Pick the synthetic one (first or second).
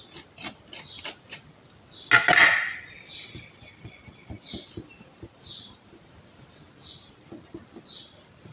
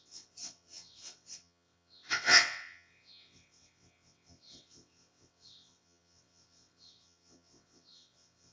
second